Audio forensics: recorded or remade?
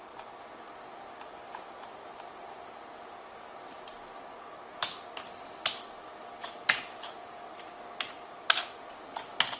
recorded